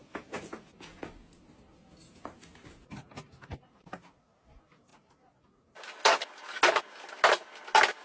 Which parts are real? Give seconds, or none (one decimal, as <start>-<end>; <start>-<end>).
0.0-8.0